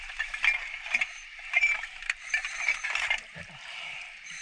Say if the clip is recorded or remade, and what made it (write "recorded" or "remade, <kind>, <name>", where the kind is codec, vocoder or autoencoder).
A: remade, vocoder, BigVGAN v2